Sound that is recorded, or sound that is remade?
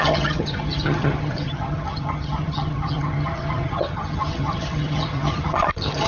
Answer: remade